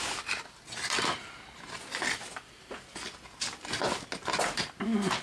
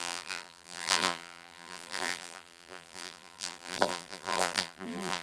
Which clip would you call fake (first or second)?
second